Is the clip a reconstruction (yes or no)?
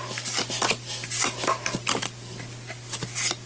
no